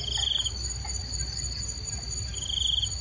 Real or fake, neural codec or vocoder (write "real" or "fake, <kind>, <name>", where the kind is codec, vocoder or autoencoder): real